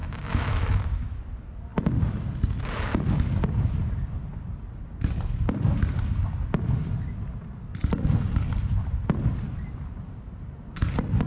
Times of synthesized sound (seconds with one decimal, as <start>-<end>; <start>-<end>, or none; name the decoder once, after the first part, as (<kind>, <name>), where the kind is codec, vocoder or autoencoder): 0.0-1.2 (autoencoder, DAC-VAE)